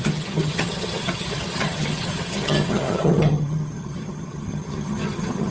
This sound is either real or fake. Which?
fake